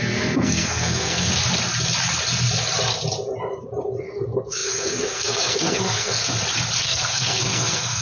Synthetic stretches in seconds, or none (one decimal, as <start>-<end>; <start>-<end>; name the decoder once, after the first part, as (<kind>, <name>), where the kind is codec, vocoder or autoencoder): 0.0-1.3 (codec, SNAC); 4.0-6.2; 6.8-8.0